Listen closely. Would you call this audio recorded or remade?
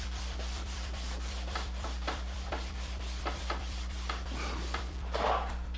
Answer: remade